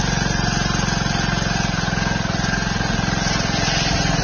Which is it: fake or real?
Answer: real